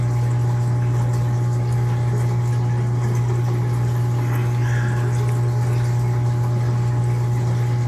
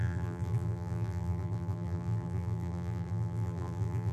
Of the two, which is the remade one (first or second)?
second